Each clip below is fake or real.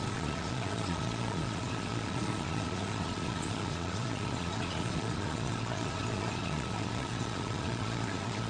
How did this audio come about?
fake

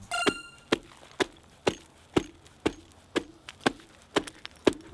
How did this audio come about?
real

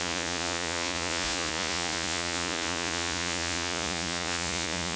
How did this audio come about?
fake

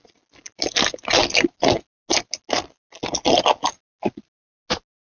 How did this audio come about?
real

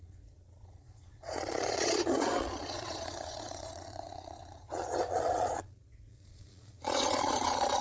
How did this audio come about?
fake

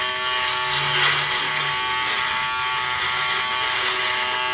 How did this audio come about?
real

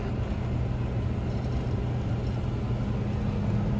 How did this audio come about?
real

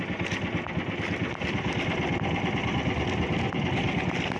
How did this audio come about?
real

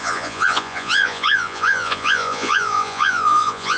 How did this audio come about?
fake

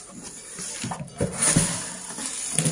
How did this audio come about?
real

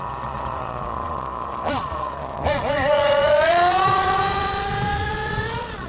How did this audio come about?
fake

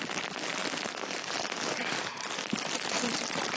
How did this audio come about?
real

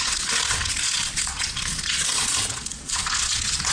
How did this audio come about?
fake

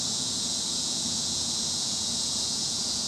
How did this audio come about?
fake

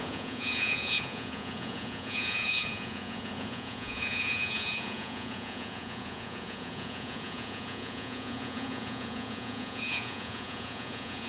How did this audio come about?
fake